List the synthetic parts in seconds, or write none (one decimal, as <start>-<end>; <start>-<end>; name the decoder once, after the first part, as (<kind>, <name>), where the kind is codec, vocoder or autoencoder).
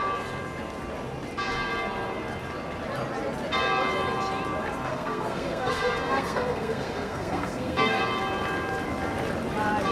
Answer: 4.9-8.0 (codec, SNAC)